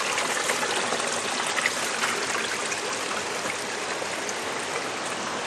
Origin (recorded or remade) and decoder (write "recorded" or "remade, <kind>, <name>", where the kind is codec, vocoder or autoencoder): recorded